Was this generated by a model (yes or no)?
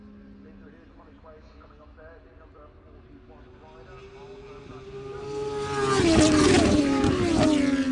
no